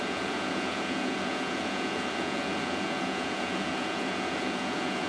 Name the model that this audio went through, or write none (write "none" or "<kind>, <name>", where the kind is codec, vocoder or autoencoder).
vocoder, Vocos